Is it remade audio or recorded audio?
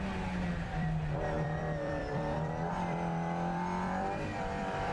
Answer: remade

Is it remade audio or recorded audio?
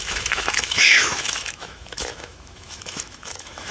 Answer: remade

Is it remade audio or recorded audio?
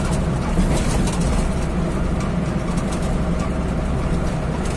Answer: recorded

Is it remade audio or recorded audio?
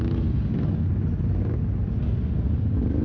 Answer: recorded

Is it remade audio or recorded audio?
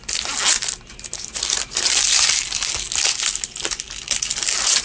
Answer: recorded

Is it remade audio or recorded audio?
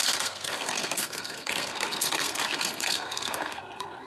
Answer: remade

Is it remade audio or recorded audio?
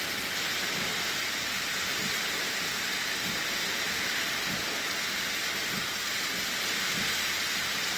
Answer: recorded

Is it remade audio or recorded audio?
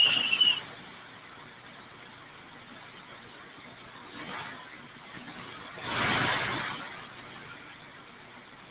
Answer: recorded